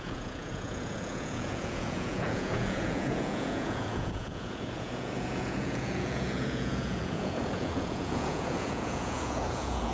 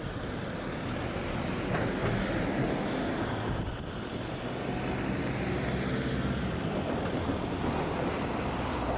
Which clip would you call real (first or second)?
second